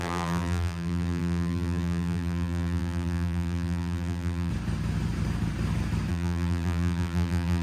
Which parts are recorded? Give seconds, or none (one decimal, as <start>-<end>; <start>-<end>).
4.5-6.1